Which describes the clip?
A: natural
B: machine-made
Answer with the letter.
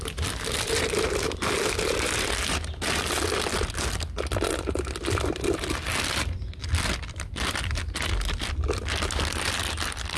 A